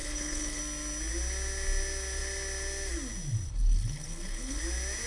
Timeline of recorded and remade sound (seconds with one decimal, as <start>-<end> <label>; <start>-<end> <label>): 0.0-0.6 remade; 0.6-3.5 recorded; 3.5-4.6 remade; 4.6-5.1 recorded